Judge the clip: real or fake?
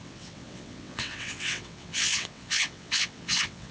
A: fake